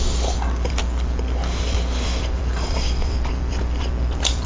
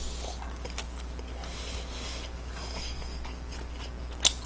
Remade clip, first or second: first